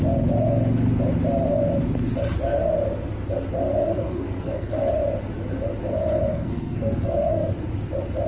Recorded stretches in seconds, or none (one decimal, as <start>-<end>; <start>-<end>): 0.0-3.9; 4.9-5.9; 7.5-8.3